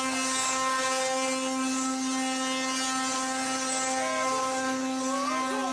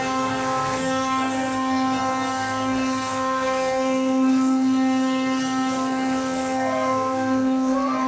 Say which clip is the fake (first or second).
second